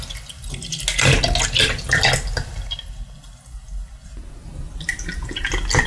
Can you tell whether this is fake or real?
real